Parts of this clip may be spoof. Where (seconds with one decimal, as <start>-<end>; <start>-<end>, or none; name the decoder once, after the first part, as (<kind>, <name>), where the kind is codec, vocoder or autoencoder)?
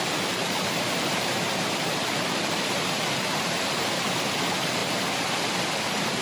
0.4-4.0 (vocoder, BigVGAN v2)